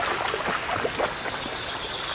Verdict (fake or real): real